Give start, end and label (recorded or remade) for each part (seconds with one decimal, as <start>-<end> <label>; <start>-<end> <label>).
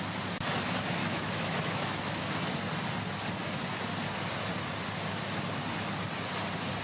0.0-1.0 recorded; 1.0-2.3 remade; 2.3-6.8 recorded